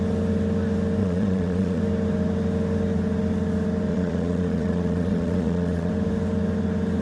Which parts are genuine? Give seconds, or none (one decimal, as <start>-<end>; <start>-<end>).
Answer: 0.0-1.0; 1.8-3.9; 5.9-7.0